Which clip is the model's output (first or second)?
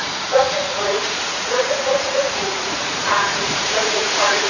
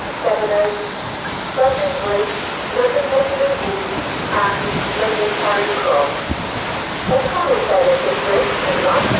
first